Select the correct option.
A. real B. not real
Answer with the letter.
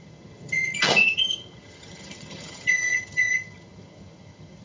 B